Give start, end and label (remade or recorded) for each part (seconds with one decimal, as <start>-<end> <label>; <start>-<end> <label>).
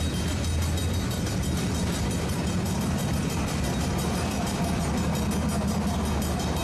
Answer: 0.0-0.8 recorded; 0.8-4.8 remade; 4.8-6.6 recorded